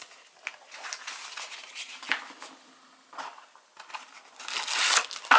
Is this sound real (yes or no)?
yes